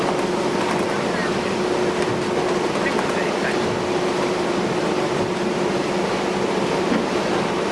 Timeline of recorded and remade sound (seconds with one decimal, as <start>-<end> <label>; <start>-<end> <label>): 0.0-7.7 recorded